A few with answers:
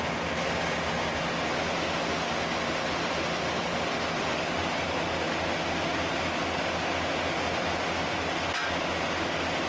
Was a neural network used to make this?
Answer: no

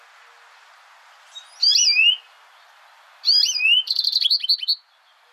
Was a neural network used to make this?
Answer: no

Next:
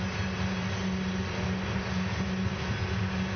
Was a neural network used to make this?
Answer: no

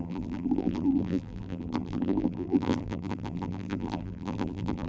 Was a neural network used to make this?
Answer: yes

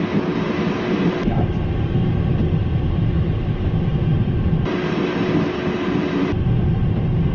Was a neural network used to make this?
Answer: no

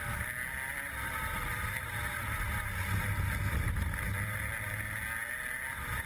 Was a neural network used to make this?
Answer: no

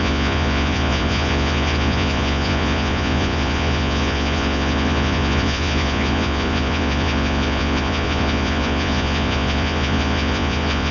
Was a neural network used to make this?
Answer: yes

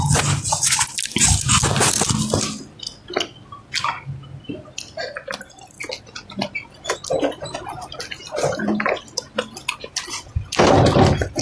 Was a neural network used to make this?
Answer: no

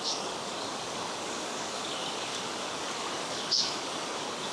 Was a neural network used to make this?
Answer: yes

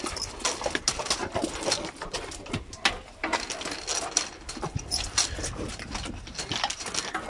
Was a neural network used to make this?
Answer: no